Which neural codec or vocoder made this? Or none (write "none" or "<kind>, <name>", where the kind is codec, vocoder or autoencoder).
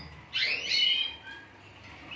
none